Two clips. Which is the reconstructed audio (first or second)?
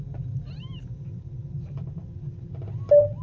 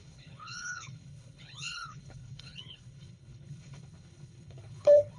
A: second